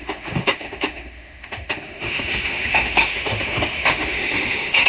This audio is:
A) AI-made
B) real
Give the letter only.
A